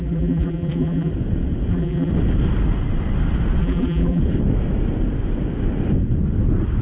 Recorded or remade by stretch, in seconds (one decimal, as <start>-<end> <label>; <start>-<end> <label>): 0.0-1.1 remade; 1.1-1.7 recorded; 1.7-2.1 remade; 2.1-3.6 recorded; 3.6-4.2 remade; 4.2-6.8 recorded